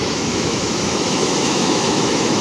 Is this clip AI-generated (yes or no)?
yes